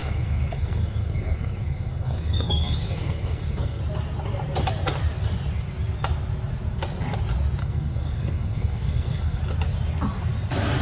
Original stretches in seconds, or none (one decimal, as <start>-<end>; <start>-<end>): 3.8-7.6; 9.4-10.8